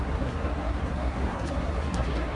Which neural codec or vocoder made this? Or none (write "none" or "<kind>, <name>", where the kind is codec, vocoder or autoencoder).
codec, SNAC